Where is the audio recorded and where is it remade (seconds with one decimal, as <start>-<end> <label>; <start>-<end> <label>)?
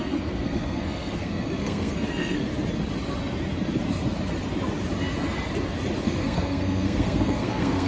0.0-2.5 remade; 2.5-6.0 recorded; 6.0-7.9 remade